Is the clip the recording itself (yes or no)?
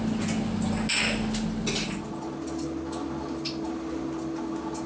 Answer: yes